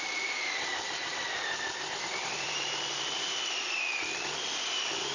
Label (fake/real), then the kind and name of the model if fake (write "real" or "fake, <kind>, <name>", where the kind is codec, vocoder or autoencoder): fake, vocoder, BigVGAN v2